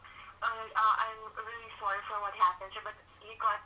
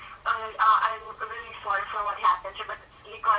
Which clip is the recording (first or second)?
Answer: first